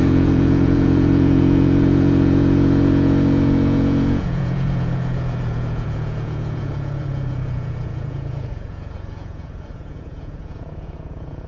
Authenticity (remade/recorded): remade